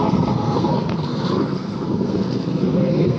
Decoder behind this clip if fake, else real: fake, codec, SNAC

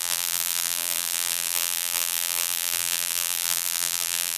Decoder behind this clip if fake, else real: fake, vocoder, BigVGAN v2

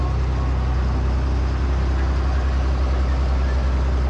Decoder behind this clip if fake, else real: real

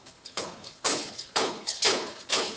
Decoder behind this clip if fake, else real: fake, codec, HILCodec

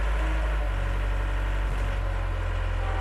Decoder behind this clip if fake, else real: real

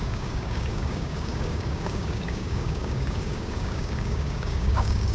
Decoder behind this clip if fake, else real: fake, codec, DAC